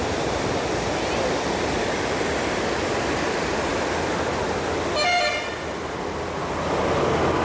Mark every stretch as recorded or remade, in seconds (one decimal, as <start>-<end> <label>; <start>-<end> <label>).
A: 0.0-7.4 recorded